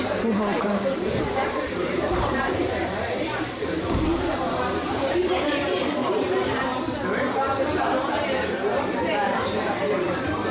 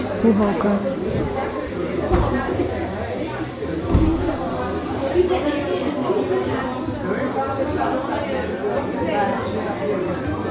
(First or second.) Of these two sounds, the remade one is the first